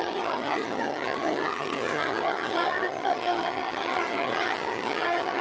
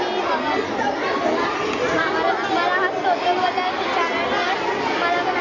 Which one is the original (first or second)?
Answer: second